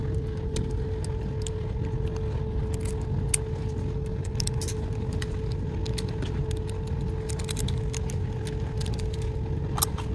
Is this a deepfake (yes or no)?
no